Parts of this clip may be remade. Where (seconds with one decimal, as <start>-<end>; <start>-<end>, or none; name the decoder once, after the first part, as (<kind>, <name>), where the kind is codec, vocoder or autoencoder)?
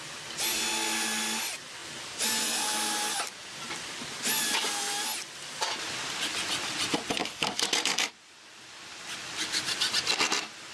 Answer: 7.2-8.1 (codec, DAC)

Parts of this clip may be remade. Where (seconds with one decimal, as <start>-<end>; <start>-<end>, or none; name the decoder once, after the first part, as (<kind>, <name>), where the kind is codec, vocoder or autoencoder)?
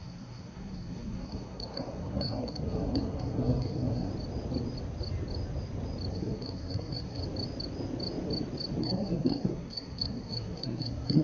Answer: 0.0-4.1 (codec, SNAC); 6.1-7.2; 8.8-11.2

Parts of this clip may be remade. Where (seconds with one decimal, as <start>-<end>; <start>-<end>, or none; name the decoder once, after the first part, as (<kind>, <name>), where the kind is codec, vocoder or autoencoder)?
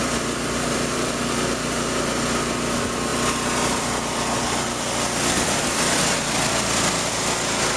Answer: 0.0-1.2 (vocoder, BigVGAN v2); 3.1-6.9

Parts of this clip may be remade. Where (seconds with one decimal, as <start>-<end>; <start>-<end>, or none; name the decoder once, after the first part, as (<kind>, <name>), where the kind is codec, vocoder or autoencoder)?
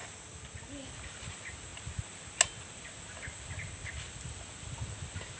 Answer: none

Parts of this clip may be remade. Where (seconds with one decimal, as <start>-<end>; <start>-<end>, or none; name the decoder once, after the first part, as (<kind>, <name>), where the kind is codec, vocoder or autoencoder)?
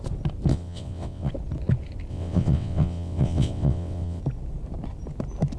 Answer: 0.5-1.3 (vocoder, WaveNeXt); 2.1-4.2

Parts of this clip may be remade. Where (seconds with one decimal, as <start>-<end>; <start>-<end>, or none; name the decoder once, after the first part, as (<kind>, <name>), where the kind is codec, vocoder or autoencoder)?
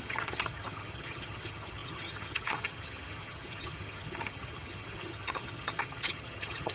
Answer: 0.0-6.7 (vocoder, HiFi-GAN)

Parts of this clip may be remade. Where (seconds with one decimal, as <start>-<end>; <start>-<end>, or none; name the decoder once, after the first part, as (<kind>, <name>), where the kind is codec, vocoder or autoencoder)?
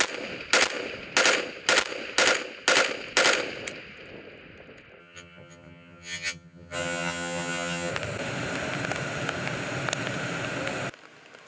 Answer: 5.0-7.9 (vocoder, HiFi-GAN)